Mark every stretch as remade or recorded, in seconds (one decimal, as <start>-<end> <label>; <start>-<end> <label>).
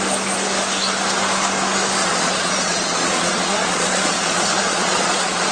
0.0-2.0 recorded; 2.0-5.5 remade